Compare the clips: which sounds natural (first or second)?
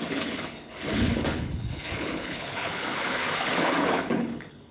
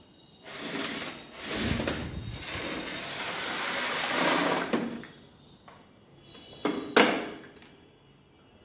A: second